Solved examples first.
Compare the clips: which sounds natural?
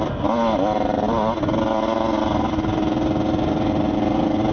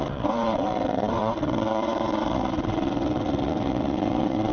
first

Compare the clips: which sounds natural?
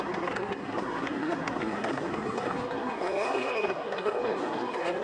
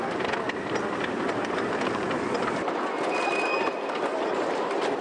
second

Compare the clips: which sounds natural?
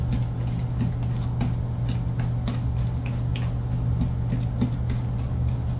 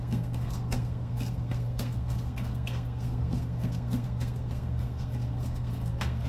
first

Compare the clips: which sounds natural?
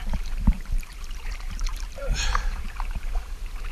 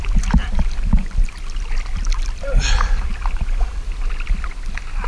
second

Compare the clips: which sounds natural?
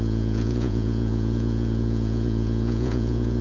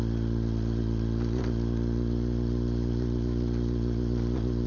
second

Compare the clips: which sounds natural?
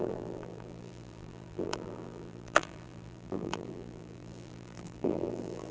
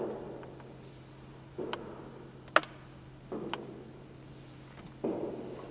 second